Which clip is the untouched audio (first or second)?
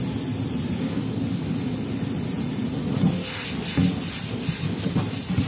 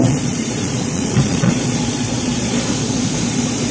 first